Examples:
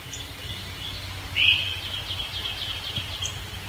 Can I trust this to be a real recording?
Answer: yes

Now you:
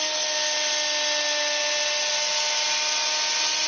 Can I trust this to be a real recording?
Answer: yes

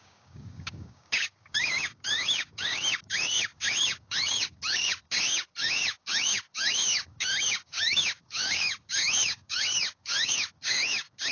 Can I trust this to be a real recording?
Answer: no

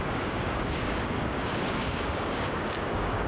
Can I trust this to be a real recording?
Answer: no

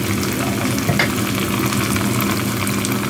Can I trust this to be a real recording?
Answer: yes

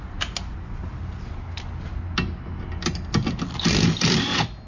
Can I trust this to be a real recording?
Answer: yes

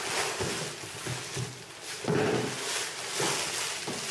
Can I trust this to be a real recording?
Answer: yes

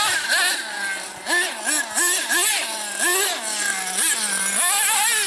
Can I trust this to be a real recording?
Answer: yes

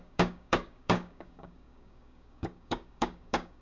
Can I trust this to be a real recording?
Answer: no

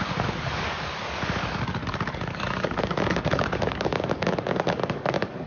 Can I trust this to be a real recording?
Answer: no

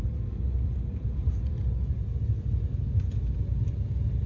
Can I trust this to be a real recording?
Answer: yes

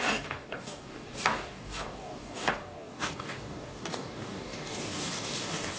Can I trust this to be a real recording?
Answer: no